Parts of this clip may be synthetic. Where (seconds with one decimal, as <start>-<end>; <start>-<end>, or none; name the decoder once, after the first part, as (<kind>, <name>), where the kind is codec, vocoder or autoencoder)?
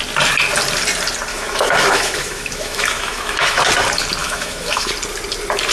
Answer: 1.3-3.6 (autoencoder, DAC-VAE); 4.2-4.9